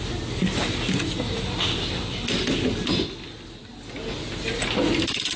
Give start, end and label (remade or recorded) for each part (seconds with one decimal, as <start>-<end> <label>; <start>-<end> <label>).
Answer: 0.0-5.4 recorded